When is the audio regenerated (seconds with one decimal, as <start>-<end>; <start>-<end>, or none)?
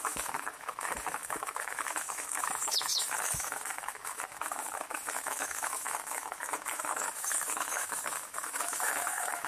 0.0-9.5